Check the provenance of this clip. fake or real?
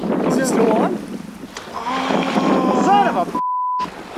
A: real